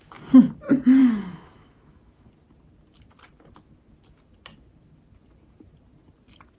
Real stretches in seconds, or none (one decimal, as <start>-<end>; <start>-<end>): 0.0-1.0; 2.3-6.6